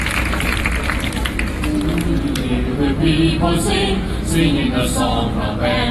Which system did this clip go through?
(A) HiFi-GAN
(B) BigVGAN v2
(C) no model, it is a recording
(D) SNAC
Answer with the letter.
C